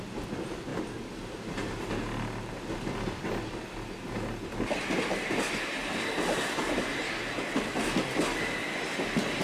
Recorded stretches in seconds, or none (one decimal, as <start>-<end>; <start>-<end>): 0.0-0.7; 1.8-5.8; 7.2-9.4